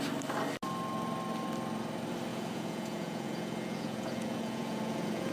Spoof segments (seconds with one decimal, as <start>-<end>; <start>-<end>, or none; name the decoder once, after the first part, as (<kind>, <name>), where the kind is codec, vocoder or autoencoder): 2.3-5.3 (vocoder, Vocos)

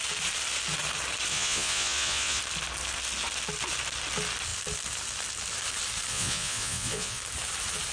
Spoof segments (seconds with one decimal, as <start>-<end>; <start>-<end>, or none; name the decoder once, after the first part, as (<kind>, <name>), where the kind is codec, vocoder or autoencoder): 1.3-2.4 (vocoder, Vocos); 6.1-7.2

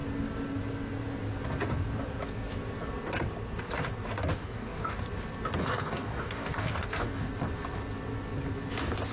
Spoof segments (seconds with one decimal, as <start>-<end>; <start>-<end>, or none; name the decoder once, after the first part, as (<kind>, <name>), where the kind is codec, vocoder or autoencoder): 4.3-5.0 (codec, DAC); 5.6-7.3

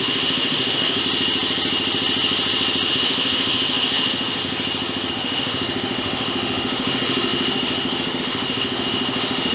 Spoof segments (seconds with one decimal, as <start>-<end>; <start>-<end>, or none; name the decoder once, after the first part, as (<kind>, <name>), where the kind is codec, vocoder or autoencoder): 0.0-1.0 (autoencoder, DAC-VAE); 2.9-4.4; 5.1-9.5

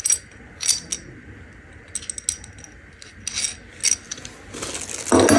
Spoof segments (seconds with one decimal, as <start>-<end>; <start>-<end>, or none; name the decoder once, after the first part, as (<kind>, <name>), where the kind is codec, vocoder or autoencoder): none

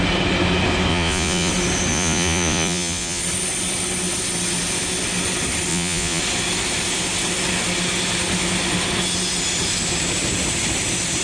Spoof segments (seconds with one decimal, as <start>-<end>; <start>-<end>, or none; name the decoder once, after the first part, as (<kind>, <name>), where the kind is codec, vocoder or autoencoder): 0.9-1.5 (vocoder, Vocos); 1.9-3.2; 5.7-6.2

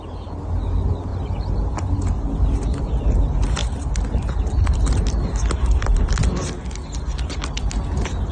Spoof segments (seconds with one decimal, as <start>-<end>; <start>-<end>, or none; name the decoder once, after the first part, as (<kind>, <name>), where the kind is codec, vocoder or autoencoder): none

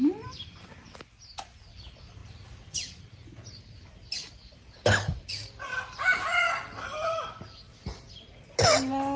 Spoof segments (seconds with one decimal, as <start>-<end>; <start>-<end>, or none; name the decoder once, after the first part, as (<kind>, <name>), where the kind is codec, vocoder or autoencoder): none